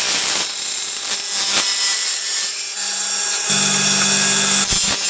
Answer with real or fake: real